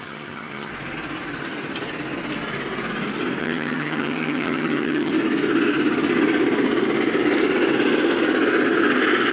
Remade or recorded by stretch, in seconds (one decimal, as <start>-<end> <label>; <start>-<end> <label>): 0.0-0.7 remade; 0.7-3.4 recorded; 3.4-5.1 remade; 5.1-9.3 recorded